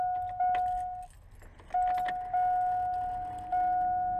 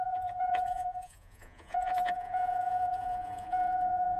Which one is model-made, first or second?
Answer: second